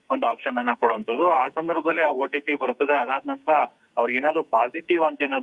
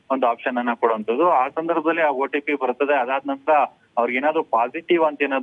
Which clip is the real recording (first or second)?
second